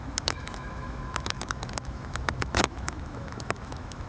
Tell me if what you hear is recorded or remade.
remade